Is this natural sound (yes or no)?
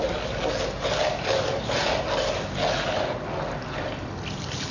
yes